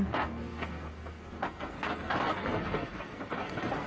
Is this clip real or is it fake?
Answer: fake